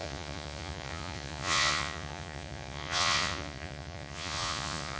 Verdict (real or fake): fake